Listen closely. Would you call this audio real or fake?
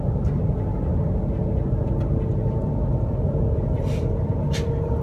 real